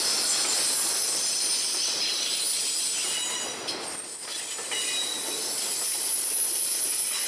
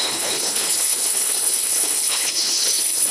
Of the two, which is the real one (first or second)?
first